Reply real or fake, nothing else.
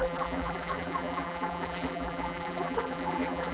fake